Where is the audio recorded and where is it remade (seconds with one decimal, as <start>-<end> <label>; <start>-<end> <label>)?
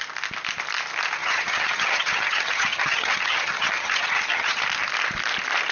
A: 0.0-1.2 recorded; 1.2-4.6 remade; 4.6-5.7 recorded